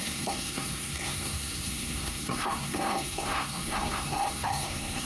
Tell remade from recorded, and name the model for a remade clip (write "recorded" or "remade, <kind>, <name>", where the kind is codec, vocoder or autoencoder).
remade, codec, SNAC